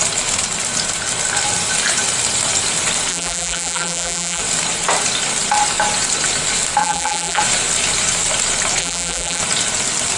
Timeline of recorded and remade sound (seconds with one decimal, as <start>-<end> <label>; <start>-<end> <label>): 0.0-3.1 recorded; 3.1-4.4 remade; 4.4-6.8 recorded; 6.8-7.4 remade; 7.4-8.8 recorded; 8.8-9.4 remade; 9.4-10.2 recorded